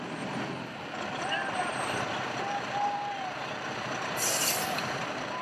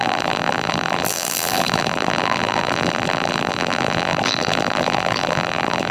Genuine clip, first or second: first